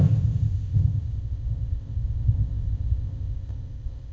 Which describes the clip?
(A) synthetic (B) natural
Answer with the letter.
A